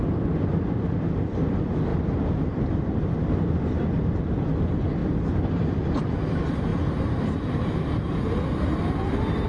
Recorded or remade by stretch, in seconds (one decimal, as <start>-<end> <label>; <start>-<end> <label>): 0.0-9.5 recorded